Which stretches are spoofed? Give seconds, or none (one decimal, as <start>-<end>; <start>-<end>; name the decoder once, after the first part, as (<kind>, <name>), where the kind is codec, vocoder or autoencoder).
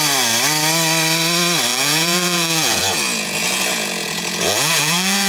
1.7-5.3 (vocoder, Vocos)